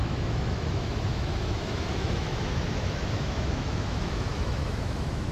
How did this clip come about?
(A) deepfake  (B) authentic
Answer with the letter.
A